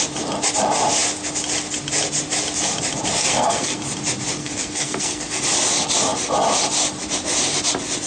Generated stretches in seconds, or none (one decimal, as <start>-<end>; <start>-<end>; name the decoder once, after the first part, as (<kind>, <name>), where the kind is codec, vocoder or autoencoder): 3.2-3.8 (codec, SNAC); 4.4-5.4